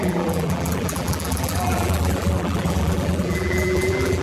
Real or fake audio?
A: fake